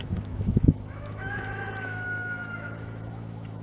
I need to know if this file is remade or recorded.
remade